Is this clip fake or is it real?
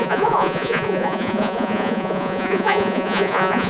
fake